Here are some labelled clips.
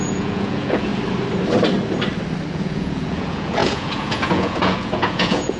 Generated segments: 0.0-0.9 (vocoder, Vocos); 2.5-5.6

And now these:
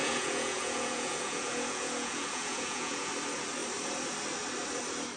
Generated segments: 0.0-3.1 (vocoder, Vocos)

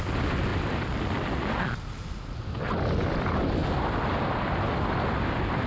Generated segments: none